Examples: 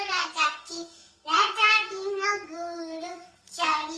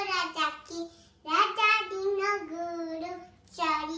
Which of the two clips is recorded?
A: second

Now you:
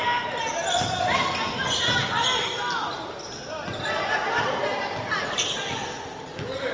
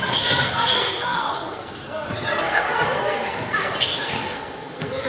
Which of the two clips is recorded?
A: first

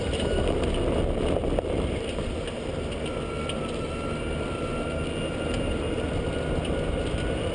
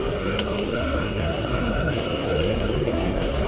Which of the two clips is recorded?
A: first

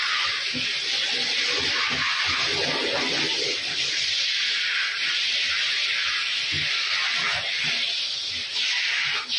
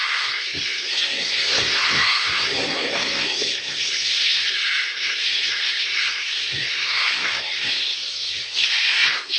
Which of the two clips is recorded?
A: first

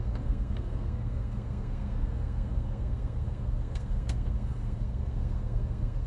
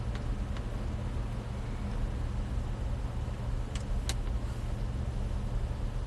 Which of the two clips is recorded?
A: second